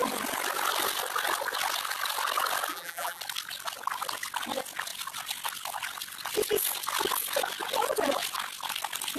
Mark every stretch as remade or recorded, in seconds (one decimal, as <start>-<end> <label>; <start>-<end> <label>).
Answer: 0.0-2.7 recorded; 2.7-3.2 remade; 3.2-9.2 recorded